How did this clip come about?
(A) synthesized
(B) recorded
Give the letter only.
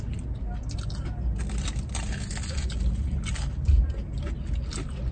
B